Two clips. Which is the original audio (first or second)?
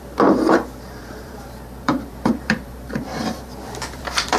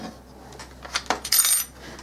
second